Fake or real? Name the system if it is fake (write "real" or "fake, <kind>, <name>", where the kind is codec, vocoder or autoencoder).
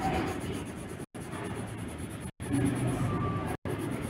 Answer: real